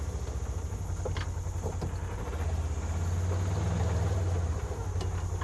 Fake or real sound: real